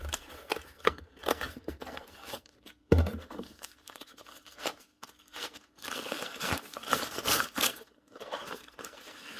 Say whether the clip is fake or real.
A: fake